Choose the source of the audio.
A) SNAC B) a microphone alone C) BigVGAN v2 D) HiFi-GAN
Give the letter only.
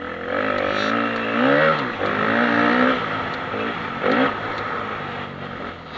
B